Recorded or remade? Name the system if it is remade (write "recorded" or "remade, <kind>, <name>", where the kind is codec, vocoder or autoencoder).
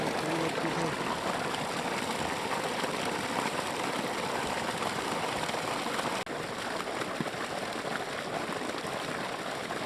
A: recorded